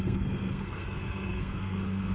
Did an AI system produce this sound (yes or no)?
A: yes